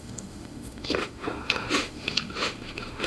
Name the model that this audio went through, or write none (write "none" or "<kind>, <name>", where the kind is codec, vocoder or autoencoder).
autoencoder, DAC-VAE